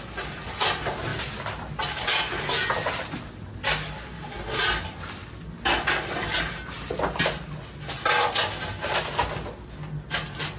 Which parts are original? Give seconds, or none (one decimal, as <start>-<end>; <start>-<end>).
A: 0.0-10.6